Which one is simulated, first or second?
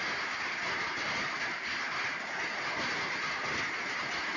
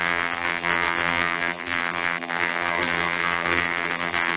second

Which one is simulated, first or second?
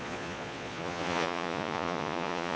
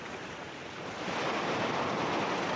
first